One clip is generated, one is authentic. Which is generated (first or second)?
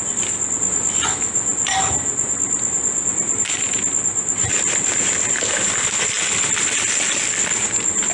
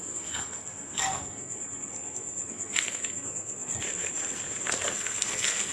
second